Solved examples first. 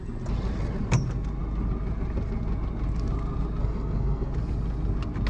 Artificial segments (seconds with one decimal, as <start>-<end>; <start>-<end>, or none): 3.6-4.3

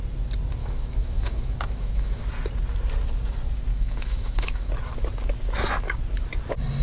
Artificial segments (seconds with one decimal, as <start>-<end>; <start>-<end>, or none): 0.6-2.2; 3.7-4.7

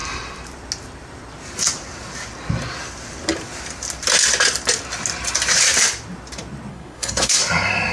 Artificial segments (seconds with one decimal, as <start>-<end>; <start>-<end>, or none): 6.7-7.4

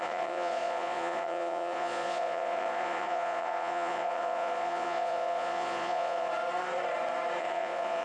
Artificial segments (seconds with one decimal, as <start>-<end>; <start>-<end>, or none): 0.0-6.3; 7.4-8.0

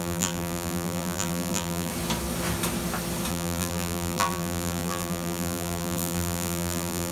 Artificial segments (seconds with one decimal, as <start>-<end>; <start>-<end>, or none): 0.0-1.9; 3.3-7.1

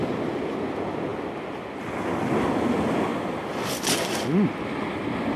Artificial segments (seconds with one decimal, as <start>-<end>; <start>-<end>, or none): none